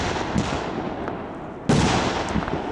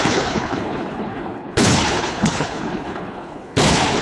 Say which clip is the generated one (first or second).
second